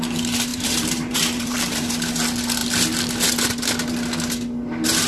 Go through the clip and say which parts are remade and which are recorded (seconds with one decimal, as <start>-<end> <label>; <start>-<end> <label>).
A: 0.0-0.5 recorded; 0.5-1.9 remade; 1.9-5.1 recorded